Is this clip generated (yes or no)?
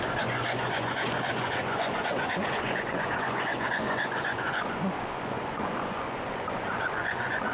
yes